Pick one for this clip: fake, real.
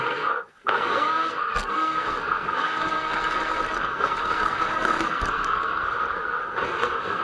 fake